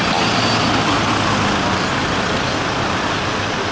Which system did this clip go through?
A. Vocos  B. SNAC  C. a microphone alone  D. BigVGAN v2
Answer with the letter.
C